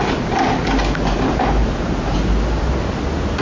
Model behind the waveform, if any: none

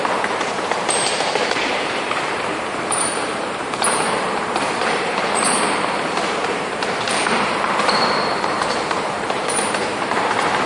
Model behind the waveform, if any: vocoder, BigVGAN v2